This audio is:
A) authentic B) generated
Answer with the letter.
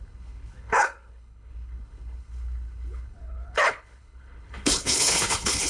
B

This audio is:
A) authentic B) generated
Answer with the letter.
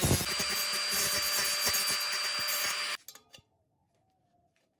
A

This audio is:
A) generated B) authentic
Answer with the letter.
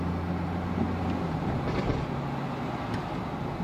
B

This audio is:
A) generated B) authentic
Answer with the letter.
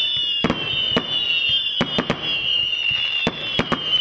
B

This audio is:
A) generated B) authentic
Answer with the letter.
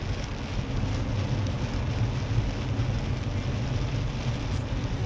B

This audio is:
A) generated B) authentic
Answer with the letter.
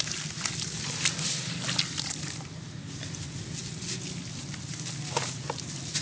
B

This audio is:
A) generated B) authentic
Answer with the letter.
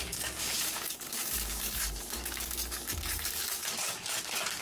A